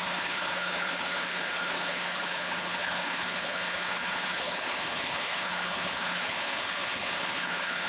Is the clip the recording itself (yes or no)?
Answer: no